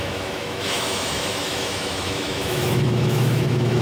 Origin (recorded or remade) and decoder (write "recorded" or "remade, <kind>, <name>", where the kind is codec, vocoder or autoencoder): remade, autoencoder, DAC-VAE